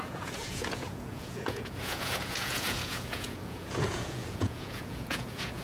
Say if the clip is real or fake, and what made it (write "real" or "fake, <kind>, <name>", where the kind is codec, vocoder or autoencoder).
fake, vocoder, Vocos